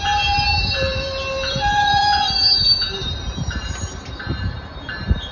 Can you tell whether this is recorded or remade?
remade